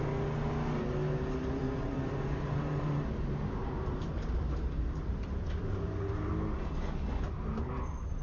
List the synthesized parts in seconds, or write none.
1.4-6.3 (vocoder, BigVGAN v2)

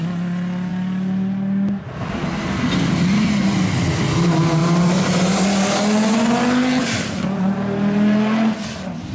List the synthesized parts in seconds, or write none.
none